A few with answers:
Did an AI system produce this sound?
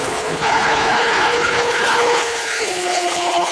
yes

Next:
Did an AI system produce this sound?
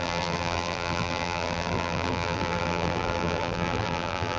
yes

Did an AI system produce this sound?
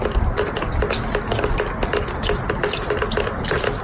no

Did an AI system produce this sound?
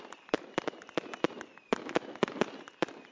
no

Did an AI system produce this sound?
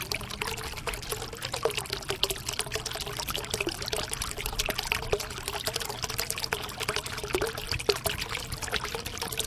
no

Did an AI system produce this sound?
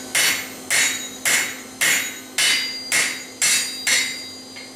no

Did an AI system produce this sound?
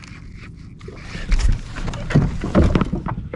no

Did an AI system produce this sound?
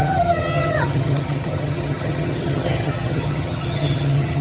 yes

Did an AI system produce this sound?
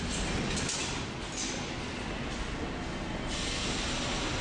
no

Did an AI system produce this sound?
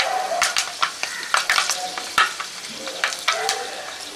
yes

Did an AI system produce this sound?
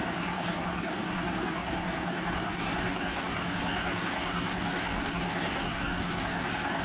yes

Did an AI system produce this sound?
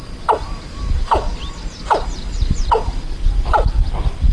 no